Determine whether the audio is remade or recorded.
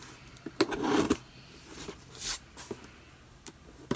recorded